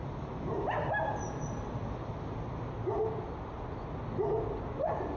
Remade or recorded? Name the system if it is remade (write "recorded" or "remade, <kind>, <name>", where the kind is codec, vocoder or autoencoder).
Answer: recorded